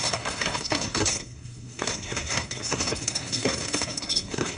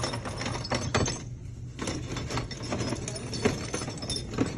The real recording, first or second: second